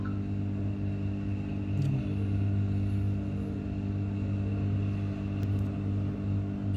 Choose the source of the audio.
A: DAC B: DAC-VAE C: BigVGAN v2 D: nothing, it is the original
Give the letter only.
D